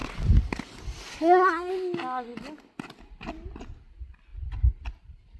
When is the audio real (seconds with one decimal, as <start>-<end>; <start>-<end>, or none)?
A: 0.0-1.1; 1.7-5.4